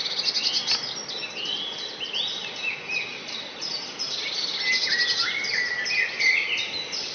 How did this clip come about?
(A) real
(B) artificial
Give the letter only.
A